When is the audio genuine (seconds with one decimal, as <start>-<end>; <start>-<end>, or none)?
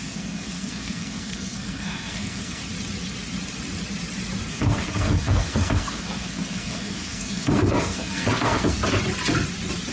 2.6-4.5; 8.8-9.9